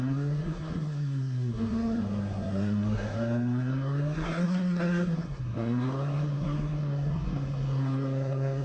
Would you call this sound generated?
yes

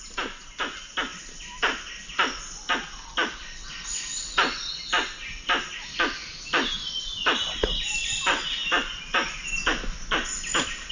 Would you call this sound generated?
no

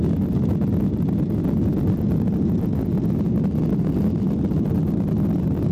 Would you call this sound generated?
no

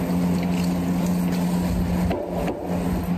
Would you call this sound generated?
no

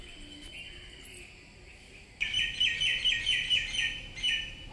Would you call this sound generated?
no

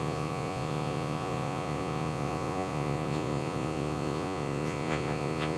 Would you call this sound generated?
yes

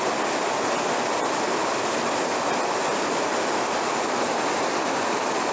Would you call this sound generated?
no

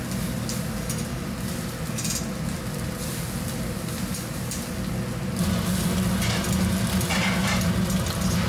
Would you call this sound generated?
no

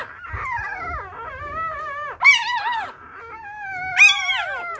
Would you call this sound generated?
no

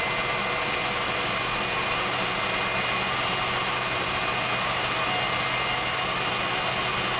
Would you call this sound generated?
no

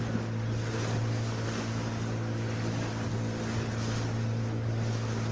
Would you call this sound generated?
no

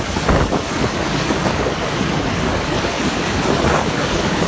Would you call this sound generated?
yes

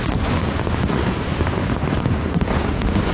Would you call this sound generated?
yes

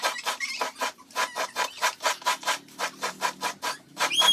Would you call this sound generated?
yes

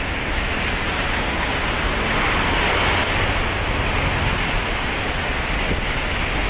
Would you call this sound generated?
no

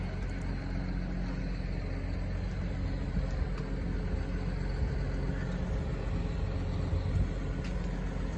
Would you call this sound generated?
no